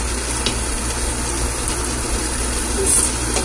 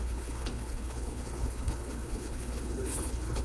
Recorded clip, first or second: first